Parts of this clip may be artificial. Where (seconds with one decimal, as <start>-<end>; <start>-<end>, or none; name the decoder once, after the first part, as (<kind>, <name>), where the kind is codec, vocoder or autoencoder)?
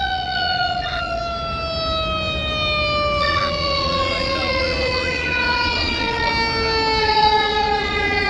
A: 0.0-1.2 (vocoder, Vocos); 3.2-6.3; 7.0-8.3